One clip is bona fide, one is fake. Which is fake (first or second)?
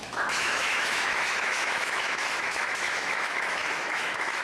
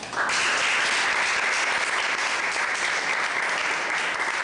first